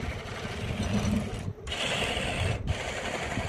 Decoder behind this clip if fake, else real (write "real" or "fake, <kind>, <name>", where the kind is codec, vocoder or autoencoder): real